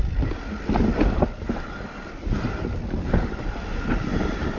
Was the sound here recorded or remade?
recorded